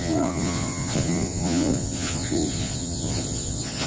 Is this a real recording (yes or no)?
no